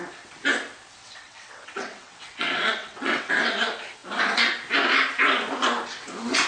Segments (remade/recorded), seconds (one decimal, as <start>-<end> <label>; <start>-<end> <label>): 0.0-1.0 recorded; 1.0-3.3 remade; 3.3-6.5 recorded